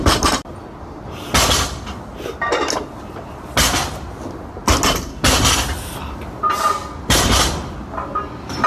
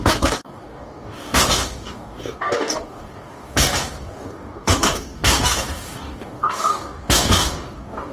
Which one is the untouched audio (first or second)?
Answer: first